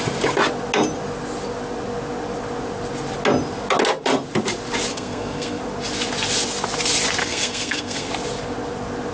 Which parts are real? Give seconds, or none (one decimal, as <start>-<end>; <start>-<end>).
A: 0.0-4.9; 5.6-7.2; 8.1-9.1